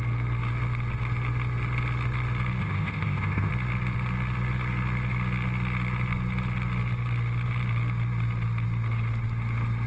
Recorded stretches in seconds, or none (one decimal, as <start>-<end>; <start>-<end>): 0.0-2.6; 3.5-9.9